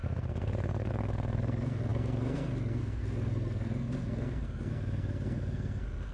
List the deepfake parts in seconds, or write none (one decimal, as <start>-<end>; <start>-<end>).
0.0-6.1